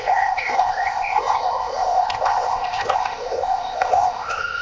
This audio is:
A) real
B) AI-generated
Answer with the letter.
B